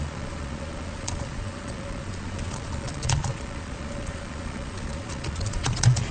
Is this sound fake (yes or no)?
yes